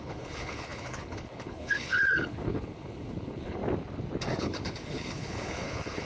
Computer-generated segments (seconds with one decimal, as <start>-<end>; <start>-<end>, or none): 0.0-3.6; 4.4-6.0